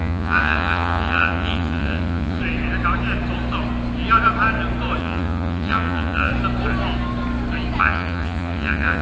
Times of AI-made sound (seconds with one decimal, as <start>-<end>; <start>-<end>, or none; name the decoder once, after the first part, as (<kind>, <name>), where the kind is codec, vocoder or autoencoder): 0.0-2.4 (vocoder, Vocos); 5.0-6.3; 7.8-9.0